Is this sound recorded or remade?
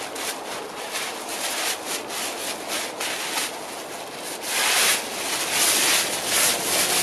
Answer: recorded